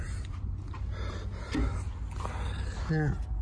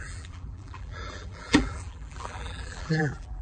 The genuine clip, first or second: first